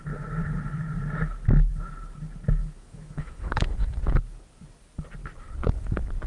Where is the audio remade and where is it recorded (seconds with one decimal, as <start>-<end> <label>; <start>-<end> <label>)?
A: 0.0-2.6 recorded; 2.6-4.0 remade; 4.0-6.3 recorded